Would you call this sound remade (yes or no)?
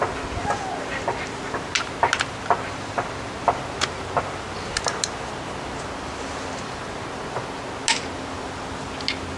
no